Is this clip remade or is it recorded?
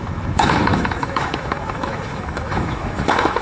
remade